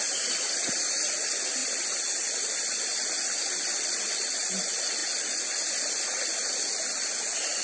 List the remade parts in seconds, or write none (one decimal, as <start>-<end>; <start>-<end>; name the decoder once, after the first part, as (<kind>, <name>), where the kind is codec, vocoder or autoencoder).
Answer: 0.0-5.0 (vocoder, BigVGAN v2); 5.8-7.6